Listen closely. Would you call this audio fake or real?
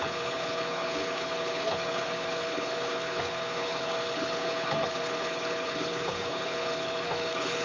fake